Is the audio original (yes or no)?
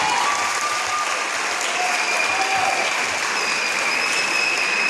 yes